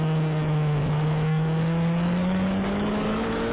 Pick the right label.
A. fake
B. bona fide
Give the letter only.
A